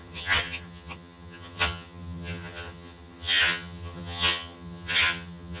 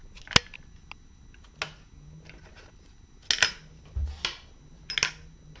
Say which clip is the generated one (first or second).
first